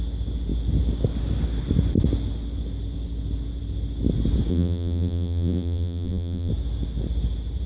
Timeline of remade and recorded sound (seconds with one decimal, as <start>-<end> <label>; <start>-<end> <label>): 0.0-4.5 recorded; 4.5-6.5 remade; 6.5-7.7 recorded